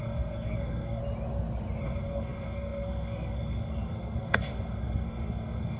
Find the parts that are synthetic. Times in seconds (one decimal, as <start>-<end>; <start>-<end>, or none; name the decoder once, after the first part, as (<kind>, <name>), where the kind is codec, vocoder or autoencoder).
0.0-1.0 (codec, SNAC); 1.8-5.8